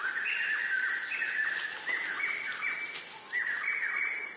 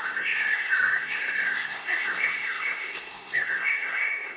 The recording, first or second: first